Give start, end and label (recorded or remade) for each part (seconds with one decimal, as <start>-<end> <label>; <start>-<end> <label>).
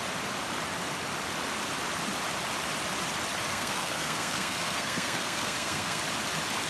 0.0-3.5 recorded; 3.5-6.0 remade; 6.0-6.7 recorded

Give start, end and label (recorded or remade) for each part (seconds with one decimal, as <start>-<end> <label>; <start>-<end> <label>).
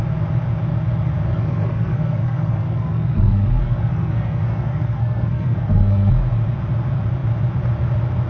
0.0-1.3 recorded; 1.3-6.1 remade; 6.1-8.3 recorded